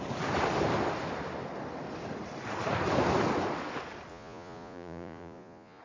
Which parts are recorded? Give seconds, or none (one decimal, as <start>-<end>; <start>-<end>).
0.0-4.1